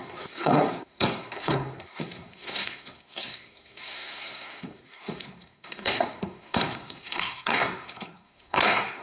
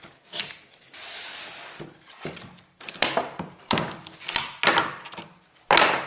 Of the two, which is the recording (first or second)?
second